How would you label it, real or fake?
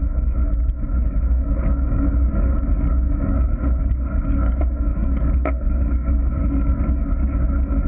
fake